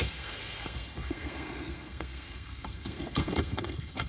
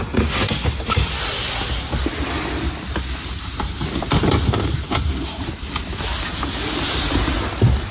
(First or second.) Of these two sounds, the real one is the second